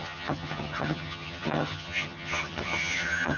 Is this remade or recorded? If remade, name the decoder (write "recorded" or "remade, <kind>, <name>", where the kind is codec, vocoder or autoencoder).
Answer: remade, vocoder, HiFi-GAN